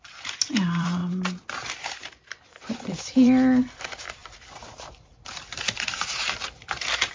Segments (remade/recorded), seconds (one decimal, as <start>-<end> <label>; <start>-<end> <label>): 0.0-1.0 remade; 1.0-1.8 recorded; 1.8-7.1 remade